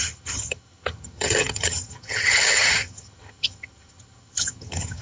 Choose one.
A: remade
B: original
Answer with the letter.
A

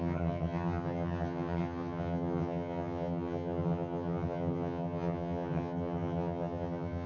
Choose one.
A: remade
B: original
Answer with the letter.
A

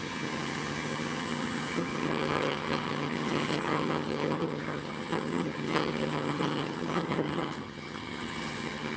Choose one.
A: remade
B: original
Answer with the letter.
A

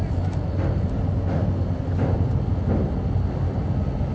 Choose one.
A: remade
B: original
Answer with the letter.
B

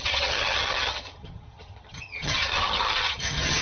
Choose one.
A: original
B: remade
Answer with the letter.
B